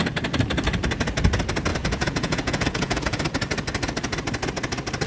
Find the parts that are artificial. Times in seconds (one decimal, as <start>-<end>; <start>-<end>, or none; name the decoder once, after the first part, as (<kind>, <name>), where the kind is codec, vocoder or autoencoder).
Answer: 1.7-3.2 (vocoder, Vocos)